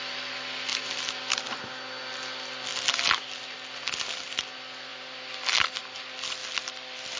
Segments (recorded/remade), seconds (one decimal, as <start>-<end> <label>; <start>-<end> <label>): 0.0-0.7 recorded; 0.7-1.6 remade; 1.6-6.4 recorded; 6.4-7.2 remade